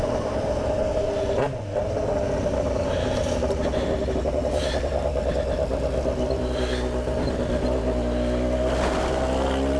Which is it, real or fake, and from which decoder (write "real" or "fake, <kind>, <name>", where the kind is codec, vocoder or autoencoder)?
real